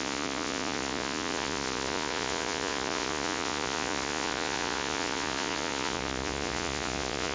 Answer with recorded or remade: remade